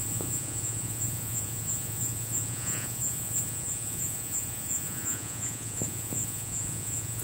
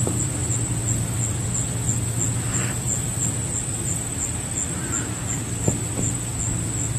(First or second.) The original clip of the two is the second